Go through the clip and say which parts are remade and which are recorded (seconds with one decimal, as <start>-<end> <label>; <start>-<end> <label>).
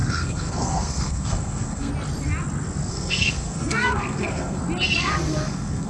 0.0-1.9 remade; 1.9-2.9 recorded; 2.9-4.6 remade; 4.6-5.0 recorded; 5.0-5.9 remade